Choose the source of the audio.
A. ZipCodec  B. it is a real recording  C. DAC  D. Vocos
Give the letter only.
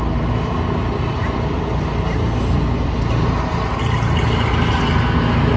B